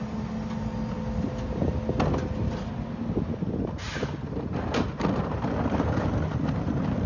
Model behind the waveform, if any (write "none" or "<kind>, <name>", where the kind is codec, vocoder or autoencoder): none